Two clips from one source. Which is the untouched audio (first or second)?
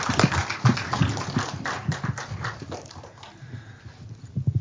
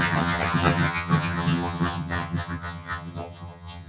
first